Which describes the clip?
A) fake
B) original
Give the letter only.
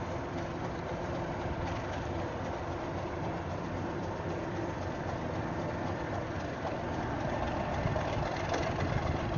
A